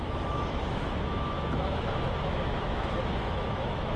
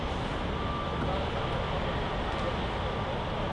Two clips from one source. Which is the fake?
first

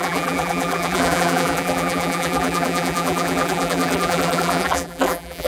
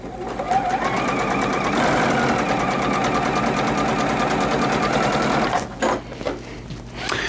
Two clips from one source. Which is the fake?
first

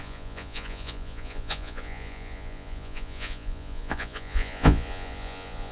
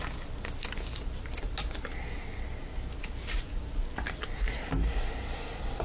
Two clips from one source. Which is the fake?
first